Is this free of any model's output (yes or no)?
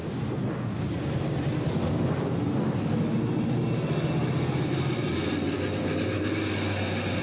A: yes